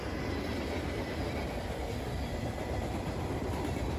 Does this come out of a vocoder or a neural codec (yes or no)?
no